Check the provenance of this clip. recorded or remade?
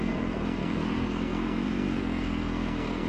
remade